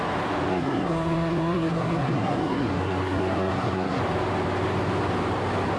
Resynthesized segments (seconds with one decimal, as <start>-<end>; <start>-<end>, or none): 0.5-4.0